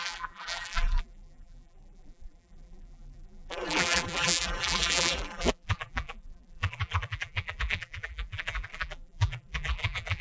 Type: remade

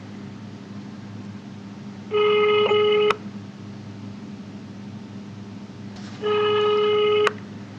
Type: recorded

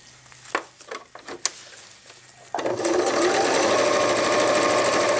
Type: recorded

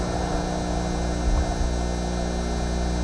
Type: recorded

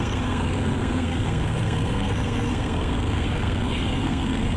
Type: remade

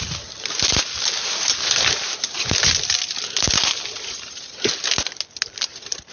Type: recorded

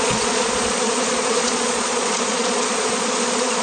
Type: remade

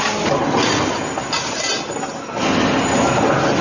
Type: recorded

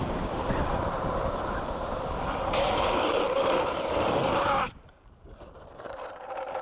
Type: remade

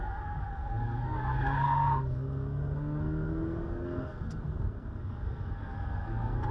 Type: remade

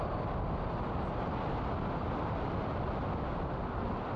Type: recorded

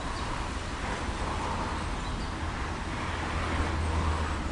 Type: recorded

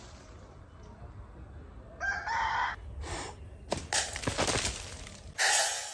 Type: recorded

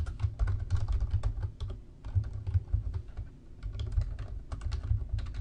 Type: recorded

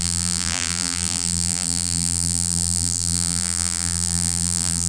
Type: remade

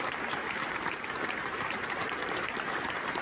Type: remade